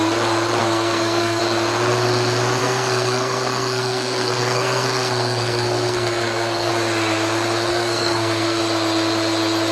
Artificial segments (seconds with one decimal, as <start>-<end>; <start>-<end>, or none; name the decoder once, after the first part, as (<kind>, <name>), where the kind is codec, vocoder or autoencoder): 0.6-1.4 (codec, SNAC); 2.6-6.7; 7.7-8.6